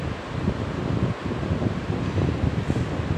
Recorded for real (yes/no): yes